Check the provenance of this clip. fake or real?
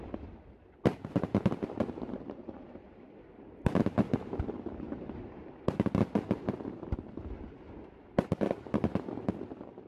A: fake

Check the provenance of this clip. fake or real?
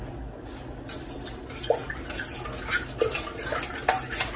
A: real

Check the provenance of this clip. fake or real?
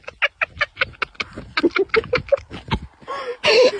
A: real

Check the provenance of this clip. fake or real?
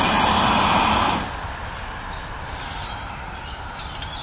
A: real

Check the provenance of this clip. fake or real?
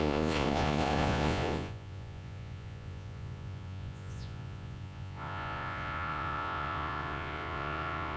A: fake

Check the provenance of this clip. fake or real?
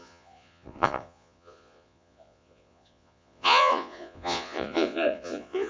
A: fake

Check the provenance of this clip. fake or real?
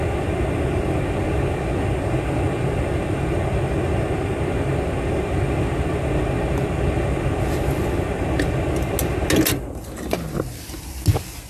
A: real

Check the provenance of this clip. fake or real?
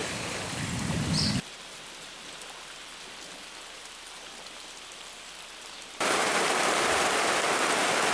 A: fake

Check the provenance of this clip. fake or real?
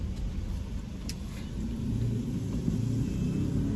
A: real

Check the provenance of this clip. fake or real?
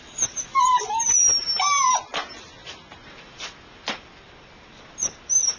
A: real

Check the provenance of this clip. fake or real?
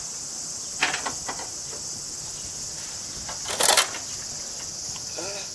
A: real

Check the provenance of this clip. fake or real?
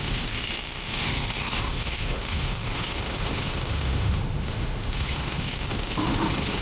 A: fake